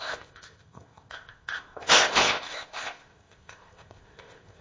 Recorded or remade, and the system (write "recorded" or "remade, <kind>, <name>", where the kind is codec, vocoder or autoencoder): remade, codec, ZipCodec